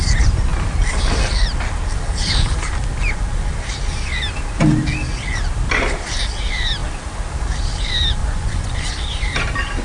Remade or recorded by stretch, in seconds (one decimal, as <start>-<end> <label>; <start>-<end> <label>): 0.0-8.2 recorded; 8.2-8.9 remade; 8.9-9.8 recorded